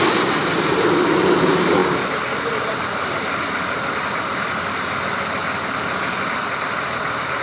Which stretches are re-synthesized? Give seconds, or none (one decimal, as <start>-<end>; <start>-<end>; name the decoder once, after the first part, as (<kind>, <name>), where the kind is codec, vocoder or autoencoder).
0.4-1.1 (vocoder, BigVGAN v2)